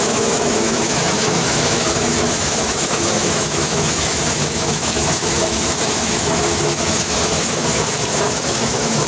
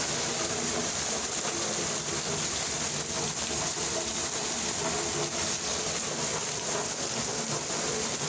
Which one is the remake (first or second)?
first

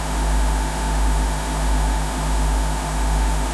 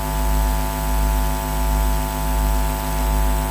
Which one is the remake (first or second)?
first